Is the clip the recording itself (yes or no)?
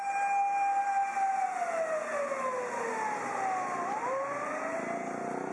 yes